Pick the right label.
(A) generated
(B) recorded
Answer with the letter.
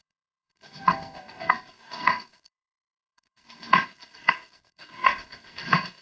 A